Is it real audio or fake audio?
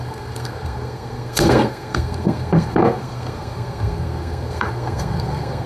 fake